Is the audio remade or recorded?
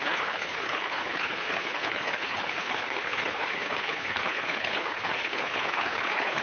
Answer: remade